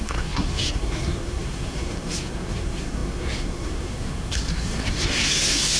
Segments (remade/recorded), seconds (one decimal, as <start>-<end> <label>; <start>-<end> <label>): 0.0-5.8 remade